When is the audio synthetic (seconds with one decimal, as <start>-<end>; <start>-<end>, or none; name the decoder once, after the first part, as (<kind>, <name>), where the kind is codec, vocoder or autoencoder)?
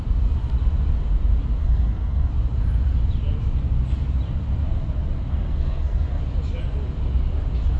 1.6-2.3 (codec, SNAC); 5.3-6.2